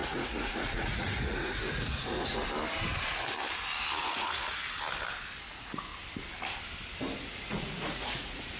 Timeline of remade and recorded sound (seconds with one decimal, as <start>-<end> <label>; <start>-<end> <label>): 0.0-2.4 remade; 2.4-4.0 recorded; 4.0-4.6 remade; 4.6-5.5 recorded; 5.5-5.9 remade; 5.9-7.2 recorded; 7.2-8.6 remade